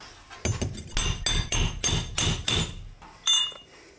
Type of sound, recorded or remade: recorded